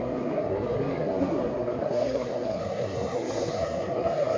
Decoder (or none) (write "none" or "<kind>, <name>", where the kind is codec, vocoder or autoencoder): codec, SNAC